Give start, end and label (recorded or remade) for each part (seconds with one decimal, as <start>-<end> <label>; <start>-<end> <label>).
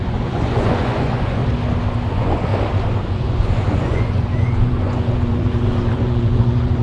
0.0-1.4 remade; 1.4-2.1 recorded; 2.1-2.5 remade; 2.5-3.1 recorded; 3.1-6.8 remade